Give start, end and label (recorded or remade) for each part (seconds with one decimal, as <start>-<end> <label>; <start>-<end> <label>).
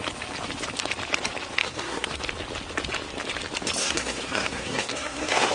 0.0-1.6 recorded; 1.6-2.2 remade; 2.2-3.8 recorded; 3.8-5.5 remade